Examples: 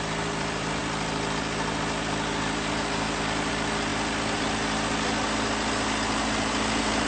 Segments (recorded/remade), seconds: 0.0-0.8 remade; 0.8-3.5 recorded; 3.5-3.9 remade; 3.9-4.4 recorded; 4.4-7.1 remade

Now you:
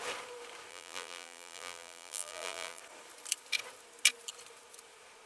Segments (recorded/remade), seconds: 0.0-0.7 recorded; 0.7-2.8 remade; 2.8-5.3 recorded